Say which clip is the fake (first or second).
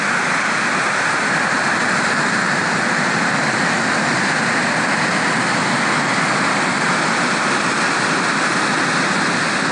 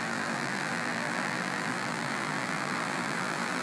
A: second